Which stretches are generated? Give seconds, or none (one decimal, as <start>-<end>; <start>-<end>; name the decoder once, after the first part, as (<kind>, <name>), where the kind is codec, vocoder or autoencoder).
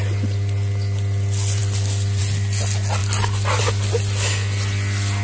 none